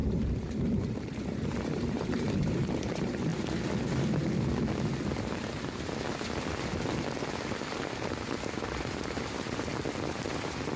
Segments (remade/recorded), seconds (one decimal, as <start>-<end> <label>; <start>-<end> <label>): 0.0-3.3 remade; 3.3-8.5 recorded; 8.5-9.7 remade; 9.7-10.2 recorded; 10.2-10.8 remade